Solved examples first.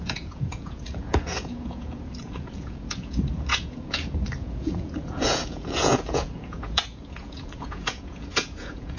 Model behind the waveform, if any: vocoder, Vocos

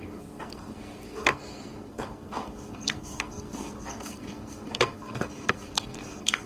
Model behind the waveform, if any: codec, SNAC